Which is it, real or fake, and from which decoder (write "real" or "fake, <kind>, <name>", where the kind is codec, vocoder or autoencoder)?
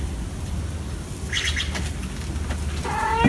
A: real